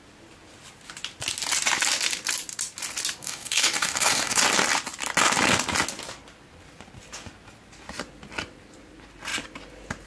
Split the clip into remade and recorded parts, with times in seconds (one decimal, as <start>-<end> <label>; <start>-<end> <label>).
0.0-3.2 recorded; 3.2-4.4 remade; 4.4-10.1 recorded